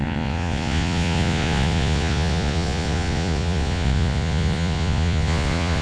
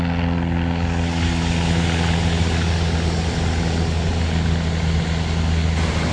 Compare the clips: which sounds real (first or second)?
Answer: second